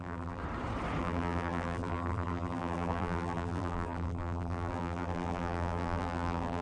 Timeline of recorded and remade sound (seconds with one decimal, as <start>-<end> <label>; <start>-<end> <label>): 0.0-0.4 remade; 0.4-1.0 recorded; 1.0-6.6 remade

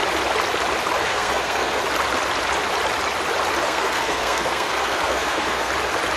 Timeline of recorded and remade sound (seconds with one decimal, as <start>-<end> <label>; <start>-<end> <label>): 0.0-1.1 recorded; 1.1-1.8 remade; 1.8-3.6 recorded; 3.6-5.7 remade; 5.7-6.2 recorded

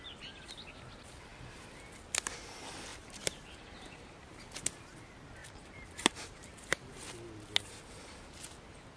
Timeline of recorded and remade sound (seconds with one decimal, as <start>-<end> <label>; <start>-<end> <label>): 0.0-2.9 recorded; 2.9-4.6 remade; 4.6-5.4 recorded; 5.4-6.5 remade; 6.5-9.0 recorded

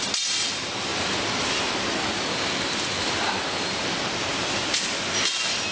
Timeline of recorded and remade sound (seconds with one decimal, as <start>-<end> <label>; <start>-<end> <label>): 0.0-5.7 recorded

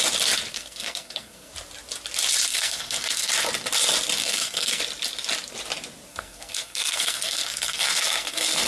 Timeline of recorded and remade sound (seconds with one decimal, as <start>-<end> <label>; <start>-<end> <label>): 0.0-0.5 recorded; 0.5-1.5 remade; 1.5-2.5 recorded; 2.5-3.3 remade; 3.3-4.2 recorded; 4.2-4.8 remade; 4.8-6.1 recorded; 6.1-8.7 remade